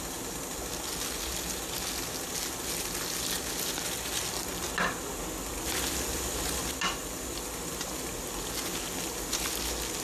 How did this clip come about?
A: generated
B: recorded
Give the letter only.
B